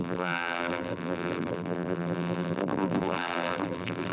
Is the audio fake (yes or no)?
yes